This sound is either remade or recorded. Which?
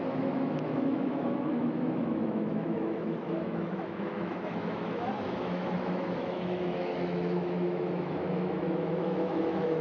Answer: remade